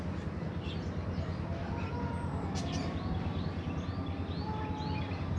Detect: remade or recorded recorded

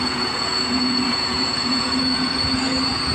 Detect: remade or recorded remade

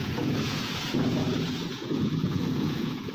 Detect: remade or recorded remade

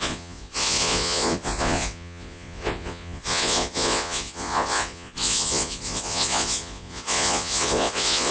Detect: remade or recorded remade